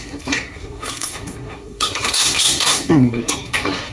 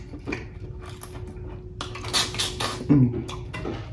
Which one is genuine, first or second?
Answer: second